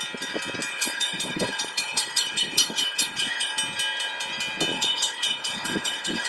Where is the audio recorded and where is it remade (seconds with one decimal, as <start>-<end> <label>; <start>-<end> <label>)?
0.0-0.7 recorded; 0.7-3.5 remade; 3.5-4.7 recorded; 4.7-6.3 remade